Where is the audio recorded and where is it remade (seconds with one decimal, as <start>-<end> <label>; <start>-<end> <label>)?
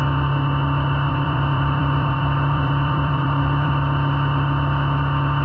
0.0-1.1 recorded; 1.1-3.7 remade; 3.7-5.4 recorded